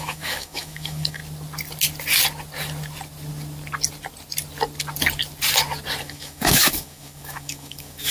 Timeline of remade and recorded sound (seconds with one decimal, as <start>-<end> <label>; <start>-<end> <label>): 0.0-1.2 remade; 1.2-6.0 recorded; 6.0-8.1 remade